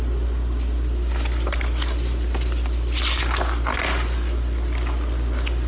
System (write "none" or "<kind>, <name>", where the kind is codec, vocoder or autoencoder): none